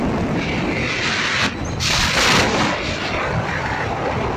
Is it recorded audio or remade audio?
recorded